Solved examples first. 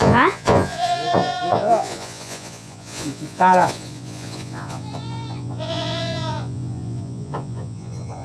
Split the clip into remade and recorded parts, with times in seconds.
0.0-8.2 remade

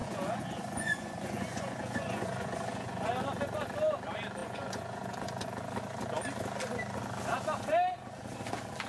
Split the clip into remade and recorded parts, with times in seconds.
0.0-3.1 remade; 3.1-4.4 recorded; 4.4-5.5 remade; 5.5-8.9 recorded

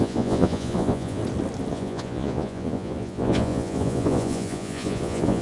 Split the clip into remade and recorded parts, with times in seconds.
0.0-1.2 remade; 1.2-1.7 recorded; 1.7-5.4 remade

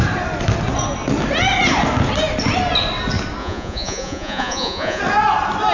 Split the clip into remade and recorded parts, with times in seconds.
0.0-3.4 recorded; 3.4-5.0 remade; 5.0-5.7 recorded

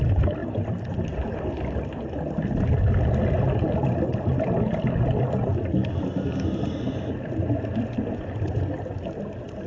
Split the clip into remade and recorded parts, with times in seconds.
0.0-9.7 recorded

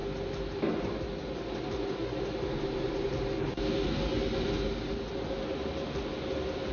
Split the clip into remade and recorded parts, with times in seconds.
0.0-6.7 recorded